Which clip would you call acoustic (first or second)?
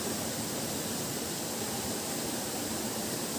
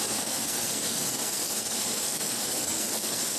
first